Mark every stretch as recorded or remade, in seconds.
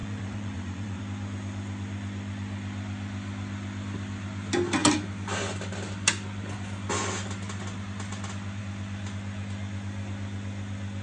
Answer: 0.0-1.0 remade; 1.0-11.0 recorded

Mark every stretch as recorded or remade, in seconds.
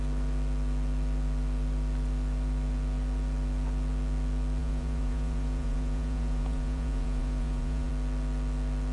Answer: 0.0-4.6 recorded; 4.6-7.9 remade; 7.9-8.9 recorded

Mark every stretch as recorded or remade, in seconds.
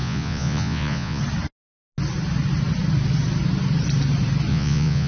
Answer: 0.0-1.2 remade; 1.2-4.5 recorded; 4.5-5.1 remade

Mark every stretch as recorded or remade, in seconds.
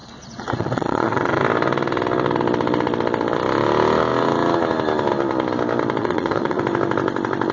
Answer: 0.0-1.4 remade; 1.4-6.0 recorded; 6.0-6.6 remade; 6.6-7.5 recorded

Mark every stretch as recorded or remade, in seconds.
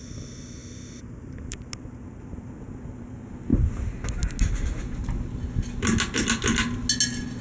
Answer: 0.0-7.4 recorded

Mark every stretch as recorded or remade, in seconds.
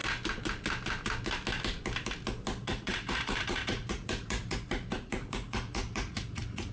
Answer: 0.0-2.6 recorded; 2.6-6.7 remade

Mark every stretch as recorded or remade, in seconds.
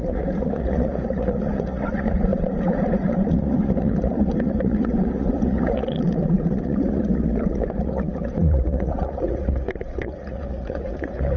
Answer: 0.0-11.4 remade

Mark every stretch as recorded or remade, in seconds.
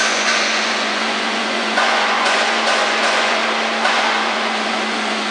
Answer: 0.0-3.4 remade; 3.4-3.9 recorded; 3.9-5.3 remade